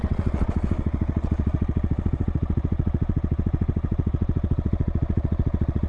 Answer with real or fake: fake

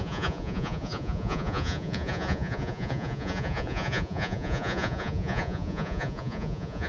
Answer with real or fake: fake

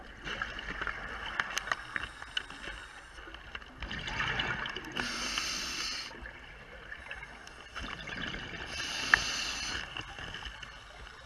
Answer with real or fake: real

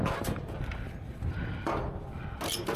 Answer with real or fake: real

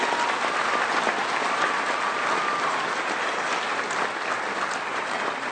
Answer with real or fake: real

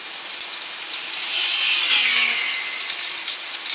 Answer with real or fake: real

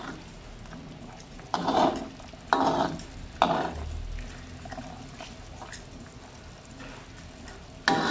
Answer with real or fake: real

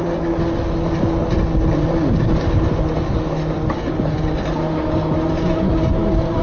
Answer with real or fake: real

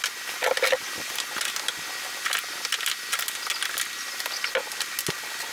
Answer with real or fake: real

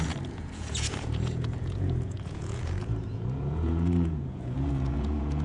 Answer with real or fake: fake